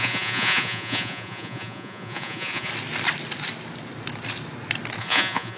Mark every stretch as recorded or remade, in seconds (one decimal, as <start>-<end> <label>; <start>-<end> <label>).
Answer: 0.0-2.7 remade; 2.7-5.0 recorded; 5.0-5.6 remade